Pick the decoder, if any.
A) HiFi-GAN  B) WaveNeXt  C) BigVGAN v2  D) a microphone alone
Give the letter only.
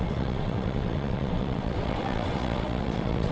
B